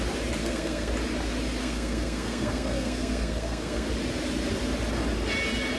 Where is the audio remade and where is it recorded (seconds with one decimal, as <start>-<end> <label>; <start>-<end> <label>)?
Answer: 0.0-0.4 recorded; 0.4-0.9 remade; 0.9-1.6 recorded; 1.6-3.9 remade; 3.9-5.8 recorded

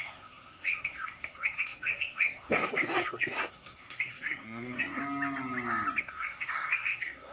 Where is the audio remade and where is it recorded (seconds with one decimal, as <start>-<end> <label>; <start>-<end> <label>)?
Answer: 0.0-5.0 remade; 5.0-6.0 recorded; 6.0-7.3 remade

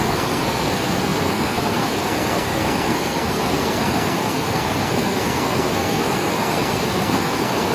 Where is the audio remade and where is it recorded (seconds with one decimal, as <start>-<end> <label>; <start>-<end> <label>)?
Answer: 0.0-7.7 remade